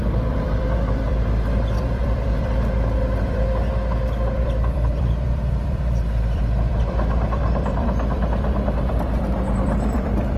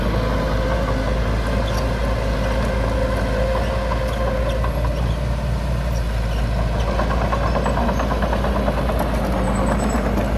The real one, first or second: second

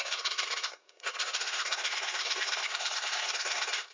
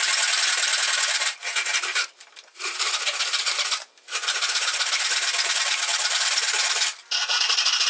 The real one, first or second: second